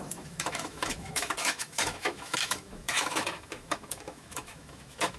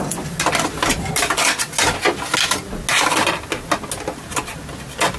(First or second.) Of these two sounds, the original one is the second